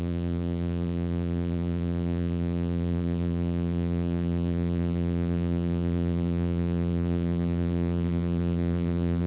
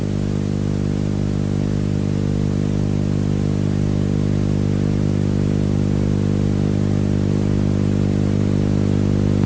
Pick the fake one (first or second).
first